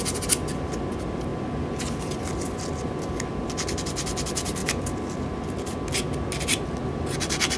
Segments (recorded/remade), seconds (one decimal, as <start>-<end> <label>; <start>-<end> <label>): 0.0-7.6 recorded